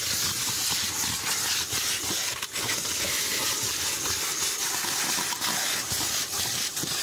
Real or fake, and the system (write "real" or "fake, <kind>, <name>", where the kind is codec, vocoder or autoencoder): real